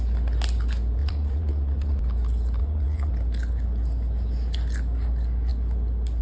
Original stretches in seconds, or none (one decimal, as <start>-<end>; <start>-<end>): 0.0-1.0; 2.0-2.6; 3.1-6.2